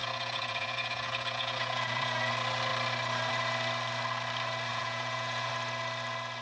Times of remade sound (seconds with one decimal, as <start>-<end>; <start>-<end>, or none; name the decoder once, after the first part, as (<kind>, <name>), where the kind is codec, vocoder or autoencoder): 0.0-2.3 (vocoder, Vocos); 4.7-5.5